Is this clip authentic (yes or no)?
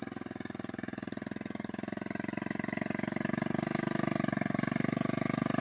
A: yes